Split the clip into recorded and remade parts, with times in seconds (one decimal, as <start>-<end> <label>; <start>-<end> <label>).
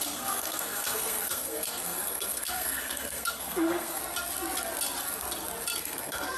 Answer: 0.0-4.0 remade; 4.0-5.8 recorded; 5.8-6.4 remade